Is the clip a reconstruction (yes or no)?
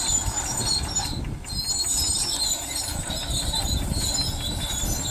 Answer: no